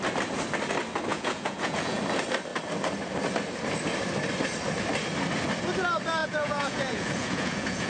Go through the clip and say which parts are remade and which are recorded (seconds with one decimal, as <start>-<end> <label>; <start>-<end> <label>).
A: 0.0-1.1 recorded; 1.1-2.0 remade; 2.0-6.2 recorded; 6.2-7.9 remade